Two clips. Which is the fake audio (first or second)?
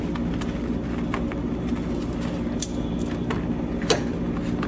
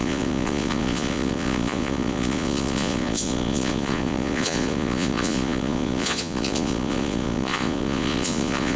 second